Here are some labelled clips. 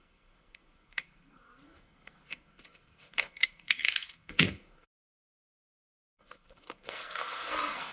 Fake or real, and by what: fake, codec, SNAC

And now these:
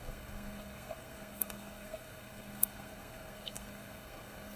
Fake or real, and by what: fake, codec, SNAC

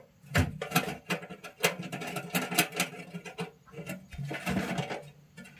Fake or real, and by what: real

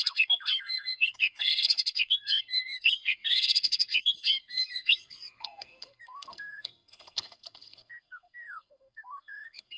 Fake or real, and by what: fake, codec, SNAC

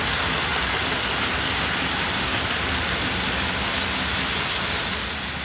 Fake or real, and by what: real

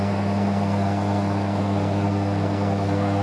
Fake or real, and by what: fake, codec, SNAC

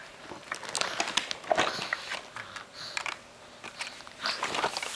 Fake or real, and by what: real